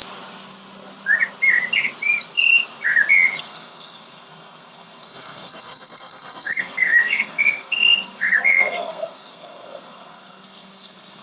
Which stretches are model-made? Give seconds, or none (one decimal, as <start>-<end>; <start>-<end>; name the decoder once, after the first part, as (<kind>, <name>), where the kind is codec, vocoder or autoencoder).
3.4-11.2 (codec, SNAC)